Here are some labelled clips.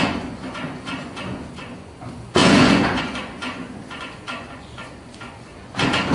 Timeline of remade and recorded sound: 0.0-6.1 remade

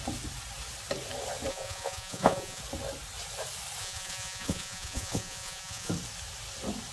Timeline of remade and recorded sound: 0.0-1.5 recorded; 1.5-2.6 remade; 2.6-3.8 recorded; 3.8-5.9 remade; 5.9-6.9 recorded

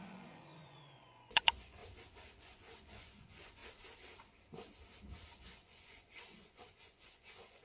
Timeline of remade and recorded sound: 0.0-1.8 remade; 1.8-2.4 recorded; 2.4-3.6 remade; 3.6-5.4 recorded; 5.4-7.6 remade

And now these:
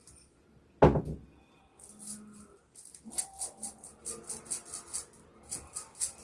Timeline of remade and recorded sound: 0.0-6.2 recorded

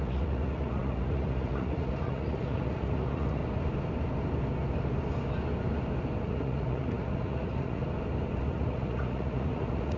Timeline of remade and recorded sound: 0.0-3.4 remade; 3.4-6.2 recorded; 6.2-7.8 remade; 7.8-8.4 recorded; 8.4-10.0 remade

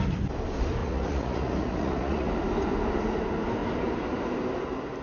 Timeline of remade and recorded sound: 0.0-0.8 recorded; 0.8-2.3 remade; 2.3-5.0 recorded

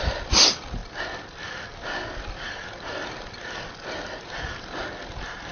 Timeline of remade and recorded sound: 0.0-5.5 recorded

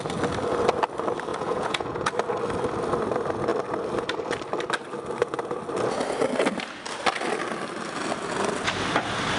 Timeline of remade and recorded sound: 0.0-1.3 recorded; 1.3-2.1 remade; 2.1-9.4 recorded